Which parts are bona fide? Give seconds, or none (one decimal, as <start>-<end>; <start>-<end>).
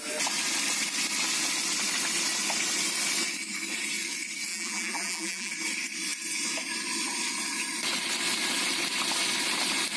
0.0-4.5; 5.5-10.0